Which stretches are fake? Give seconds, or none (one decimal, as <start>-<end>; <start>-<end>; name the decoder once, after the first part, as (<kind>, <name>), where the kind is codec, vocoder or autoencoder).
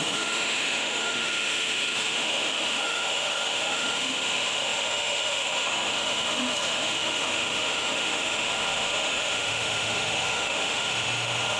0.0-11.6 (autoencoder, DAC-VAE)